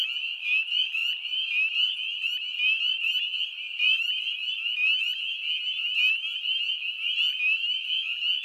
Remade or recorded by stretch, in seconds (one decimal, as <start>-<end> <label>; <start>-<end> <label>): 0.0-8.4 recorded

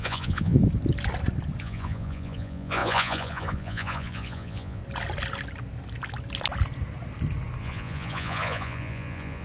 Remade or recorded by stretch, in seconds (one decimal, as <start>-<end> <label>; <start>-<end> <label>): 0.0-0.6 remade; 0.6-1.6 recorded; 1.6-4.8 remade; 4.8-7.6 recorded; 7.6-9.4 remade

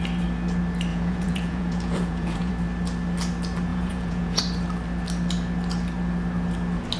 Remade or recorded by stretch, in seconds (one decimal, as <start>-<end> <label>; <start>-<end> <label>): 0.0-0.9 recorded; 0.9-2.5 remade; 2.5-3.7 recorded; 3.7-4.4 remade; 4.4-7.0 recorded

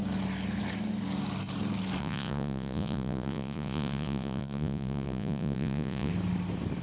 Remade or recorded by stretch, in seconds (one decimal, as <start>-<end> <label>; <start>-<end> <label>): 0.0-2.0 recorded; 2.0-6.1 remade; 6.1-6.8 recorded

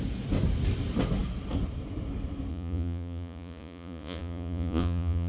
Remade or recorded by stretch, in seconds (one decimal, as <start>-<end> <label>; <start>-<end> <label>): 0.0-2.5 recorded; 2.5-5.3 remade

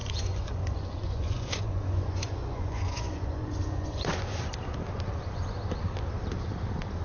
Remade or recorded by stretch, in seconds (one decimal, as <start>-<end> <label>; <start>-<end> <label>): 0.0-4.2 remade; 4.2-7.0 recorded

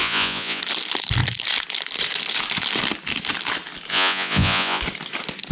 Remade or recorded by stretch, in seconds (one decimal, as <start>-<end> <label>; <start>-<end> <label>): 0.0-0.6 remade; 0.6-3.9 recorded; 3.9-4.8 remade; 4.8-5.5 recorded

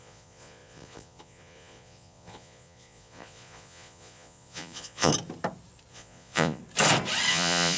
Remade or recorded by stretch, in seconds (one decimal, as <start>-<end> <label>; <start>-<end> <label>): 0.0-5.1 remade; 5.1-5.9 recorded; 5.9-6.6 remade; 6.6-7.3 recorded; 7.3-7.8 remade